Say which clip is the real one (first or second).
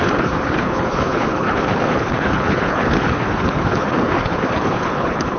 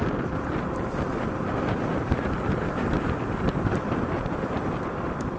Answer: second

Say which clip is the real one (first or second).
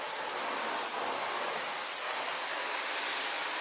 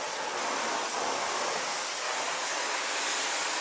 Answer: first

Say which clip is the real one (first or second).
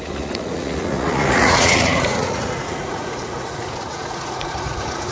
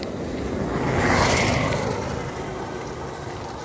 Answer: second